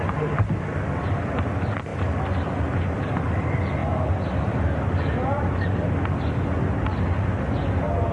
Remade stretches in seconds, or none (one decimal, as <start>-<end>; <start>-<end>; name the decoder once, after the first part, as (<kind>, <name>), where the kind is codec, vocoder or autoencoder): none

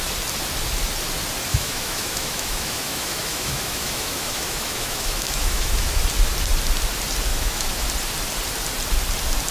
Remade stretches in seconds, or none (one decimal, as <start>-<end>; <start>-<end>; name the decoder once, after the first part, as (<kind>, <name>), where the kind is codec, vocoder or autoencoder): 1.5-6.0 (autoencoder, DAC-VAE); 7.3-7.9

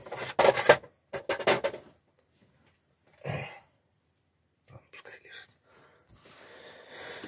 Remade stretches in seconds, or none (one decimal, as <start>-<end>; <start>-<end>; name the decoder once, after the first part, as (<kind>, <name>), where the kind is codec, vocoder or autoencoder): 2.4-6.8 (vocoder, BigVGAN v2)